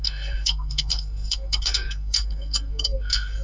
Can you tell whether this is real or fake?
fake